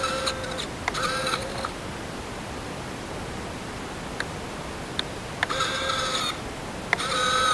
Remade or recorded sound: recorded